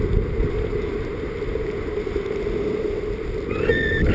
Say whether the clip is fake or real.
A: real